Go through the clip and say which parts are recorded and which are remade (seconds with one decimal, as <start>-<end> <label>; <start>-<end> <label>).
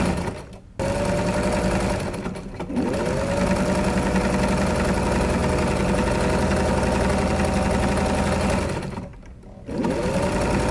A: 0.0-10.7 recorded